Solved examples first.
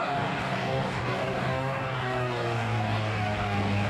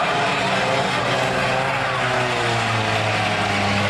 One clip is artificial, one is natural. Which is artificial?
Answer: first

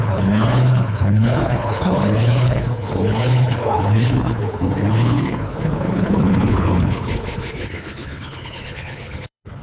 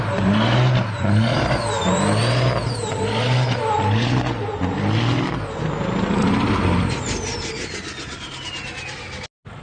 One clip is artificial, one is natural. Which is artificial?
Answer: first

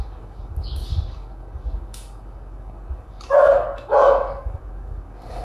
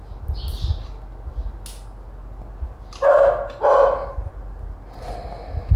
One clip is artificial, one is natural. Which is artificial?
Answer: first